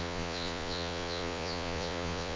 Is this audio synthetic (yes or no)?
yes